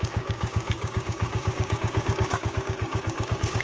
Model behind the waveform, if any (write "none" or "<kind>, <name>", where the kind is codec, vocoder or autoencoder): codec, DAC